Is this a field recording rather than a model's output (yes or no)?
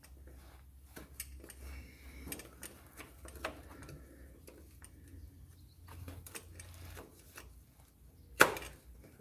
yes